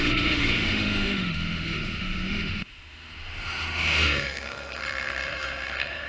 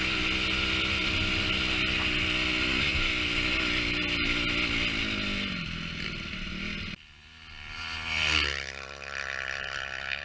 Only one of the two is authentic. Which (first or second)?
second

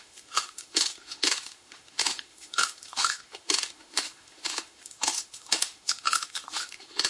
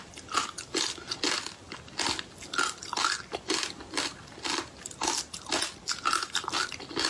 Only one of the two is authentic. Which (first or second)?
second